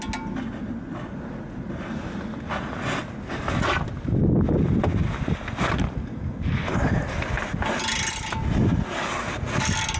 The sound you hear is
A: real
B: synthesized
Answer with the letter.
A